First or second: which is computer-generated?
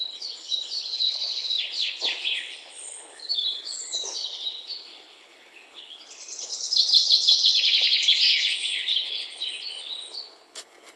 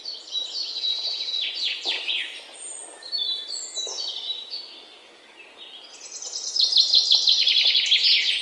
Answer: first